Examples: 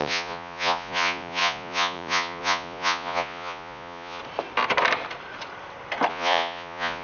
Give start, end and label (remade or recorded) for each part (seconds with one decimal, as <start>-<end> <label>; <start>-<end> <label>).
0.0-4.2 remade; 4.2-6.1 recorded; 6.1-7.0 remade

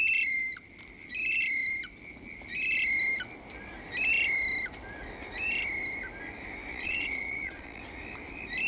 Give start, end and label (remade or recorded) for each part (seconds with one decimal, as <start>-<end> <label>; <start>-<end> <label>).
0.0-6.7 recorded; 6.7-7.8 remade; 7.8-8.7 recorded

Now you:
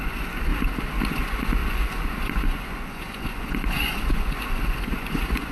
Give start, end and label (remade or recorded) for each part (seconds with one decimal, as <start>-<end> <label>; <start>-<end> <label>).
0.0-0.5 remade; 0.5-1.1 recorded; 1.1-5.5 remade

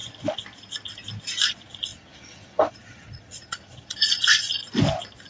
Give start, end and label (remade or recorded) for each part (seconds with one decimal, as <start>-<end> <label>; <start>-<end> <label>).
0.0-1.5 recorded; 1.5-4.6 remade; 4.6-5.3 recorded

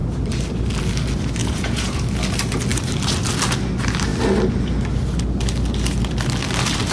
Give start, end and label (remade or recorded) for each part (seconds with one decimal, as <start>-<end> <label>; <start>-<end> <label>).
0.0-1.4 recorded; 1.4-2.0 remade; 2.0-6.9 recorded

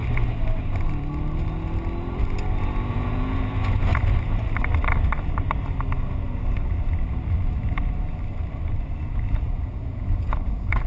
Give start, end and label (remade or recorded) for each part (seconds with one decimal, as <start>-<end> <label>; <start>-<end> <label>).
0.0-2.9 recorded; 2.9-3.9 remade; 3.9-9.0 recorded; 9.0-10.9 remade

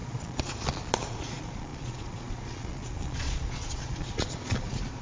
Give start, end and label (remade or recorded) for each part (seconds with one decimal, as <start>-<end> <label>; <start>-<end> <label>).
0.0-5.0 remade

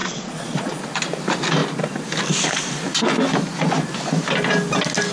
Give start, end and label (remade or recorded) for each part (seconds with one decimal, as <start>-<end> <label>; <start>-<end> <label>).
0.0-0.8 remade; 0.8-5.1 recorded